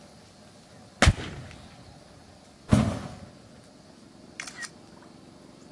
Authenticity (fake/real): real